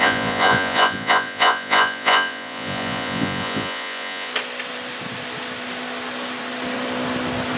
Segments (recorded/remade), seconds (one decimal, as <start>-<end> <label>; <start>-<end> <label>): 0.0-4.3 remade; 4.3-7.6 recorded